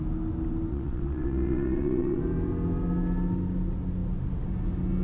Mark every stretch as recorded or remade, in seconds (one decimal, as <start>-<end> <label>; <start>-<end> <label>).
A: 0.0-0.7 recorded; 0.7-2.2 remade; 2.2-5.0 recorded